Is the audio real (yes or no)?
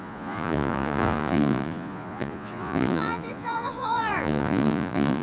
no